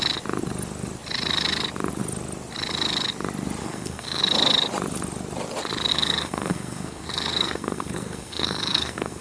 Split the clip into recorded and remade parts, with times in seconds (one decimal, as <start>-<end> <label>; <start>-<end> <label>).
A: 0.0-3.6 recorded; 3.6-4.2 remade; 4.2-5.9 recorded; 5.9-9.2 remade